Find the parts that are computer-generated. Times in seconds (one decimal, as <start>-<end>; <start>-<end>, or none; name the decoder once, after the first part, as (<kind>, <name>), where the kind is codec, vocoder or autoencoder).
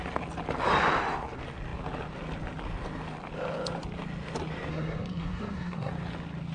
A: 4.7-5.9 (codec, SNAC)